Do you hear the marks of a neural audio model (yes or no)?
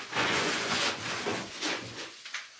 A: yes